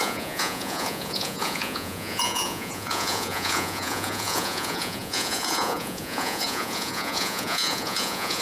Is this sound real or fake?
fake